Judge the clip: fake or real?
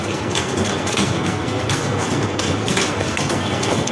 fake